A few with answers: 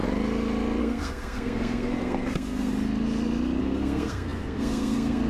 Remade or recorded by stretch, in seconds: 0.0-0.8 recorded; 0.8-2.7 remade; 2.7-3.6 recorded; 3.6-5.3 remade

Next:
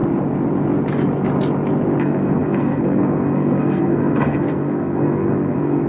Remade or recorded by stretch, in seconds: 0.0-2.0 recorded; 2.0-5.9 remade